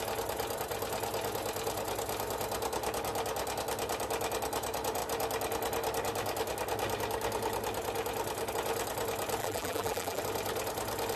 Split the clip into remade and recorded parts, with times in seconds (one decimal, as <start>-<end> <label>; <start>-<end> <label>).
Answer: 0.0-9.4 recorded; 9.4-10.2 remade; 10.2-11.2 recorded